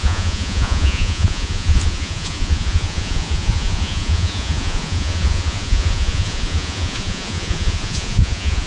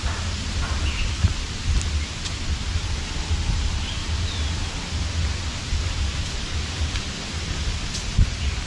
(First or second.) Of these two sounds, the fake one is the first